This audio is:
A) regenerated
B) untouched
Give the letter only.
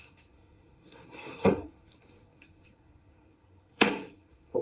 A